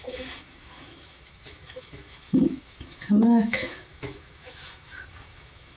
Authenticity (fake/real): fake